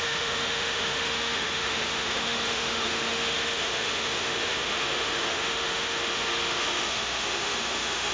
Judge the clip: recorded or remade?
remade